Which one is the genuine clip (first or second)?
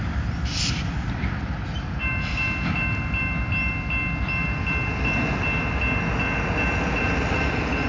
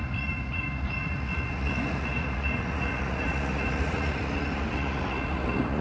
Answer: first